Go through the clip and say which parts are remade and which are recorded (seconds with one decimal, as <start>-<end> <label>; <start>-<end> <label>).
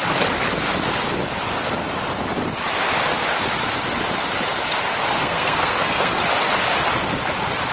0.0-5.1 recorded; 5.1-6.1 remade; 6.1-7.7 recorded